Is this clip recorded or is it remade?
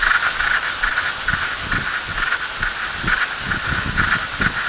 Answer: recorded